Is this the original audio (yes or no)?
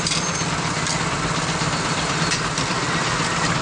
no